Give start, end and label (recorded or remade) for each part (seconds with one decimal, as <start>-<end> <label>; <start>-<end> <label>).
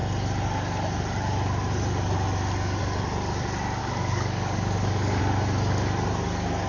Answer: 0.0-3.8 recorded; 3.8-5.2 remade; 5.2-6.7 recorded